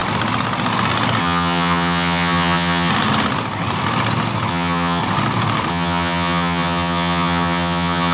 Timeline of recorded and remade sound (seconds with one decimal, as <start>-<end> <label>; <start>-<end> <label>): 0.0-1.2 recorded; 1.2-2.9 remade; 2.9-4.5 recorded; 4.5-5.0 remade; 5.0-5.7 recorded; 5.7-8.1 remade